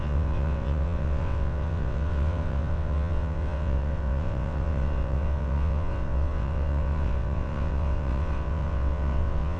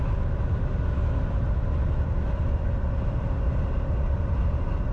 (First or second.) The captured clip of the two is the second